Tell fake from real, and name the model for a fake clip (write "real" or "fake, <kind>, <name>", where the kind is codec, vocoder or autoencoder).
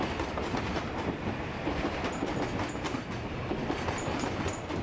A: real